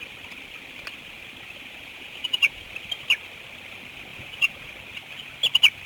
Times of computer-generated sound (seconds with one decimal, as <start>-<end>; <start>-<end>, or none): 1.8-2.7; 4.1-4.7